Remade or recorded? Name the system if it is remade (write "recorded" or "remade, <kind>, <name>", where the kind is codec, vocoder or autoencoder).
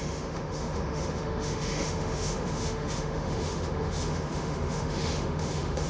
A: remade, autoencoder, DAC-VAE